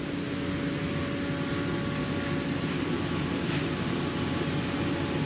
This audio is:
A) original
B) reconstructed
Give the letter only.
A